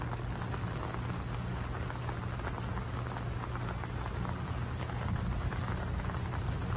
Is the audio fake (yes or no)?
no